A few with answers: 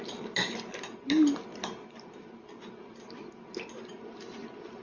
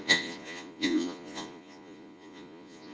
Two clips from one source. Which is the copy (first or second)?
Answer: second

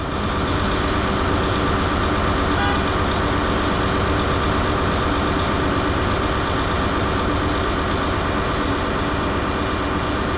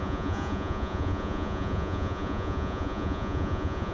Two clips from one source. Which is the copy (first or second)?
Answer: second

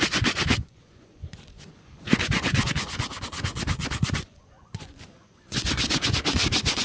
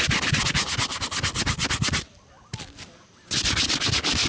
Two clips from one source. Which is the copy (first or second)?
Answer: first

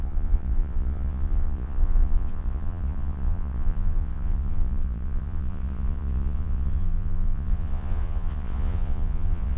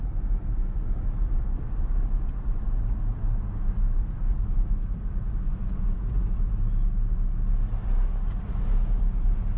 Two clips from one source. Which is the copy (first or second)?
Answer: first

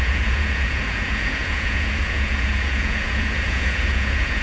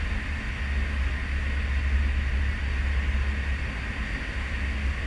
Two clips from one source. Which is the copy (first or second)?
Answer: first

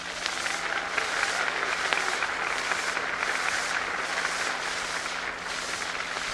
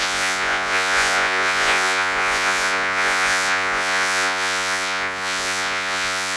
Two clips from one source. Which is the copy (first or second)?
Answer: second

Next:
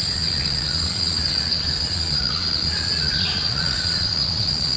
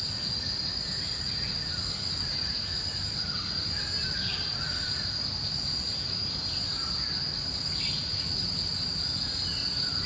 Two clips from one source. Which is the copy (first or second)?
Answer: first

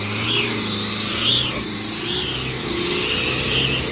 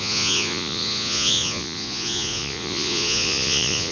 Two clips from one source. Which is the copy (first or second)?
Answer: second